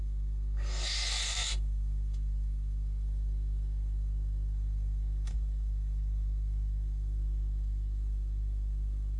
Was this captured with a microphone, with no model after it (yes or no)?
no